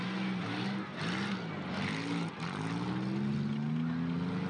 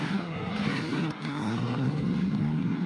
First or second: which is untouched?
first